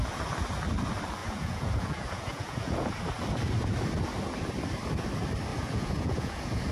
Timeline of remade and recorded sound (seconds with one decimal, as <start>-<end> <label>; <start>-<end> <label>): 0.0-1.2 recorded; 1.2-3.0 remade; 3.0-5.5 recorded; 5.5-6.7 remade